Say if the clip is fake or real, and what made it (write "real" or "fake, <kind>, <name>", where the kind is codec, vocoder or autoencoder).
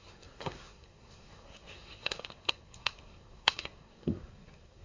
fake, codec, SNAC